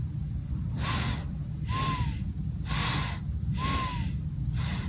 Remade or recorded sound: recorded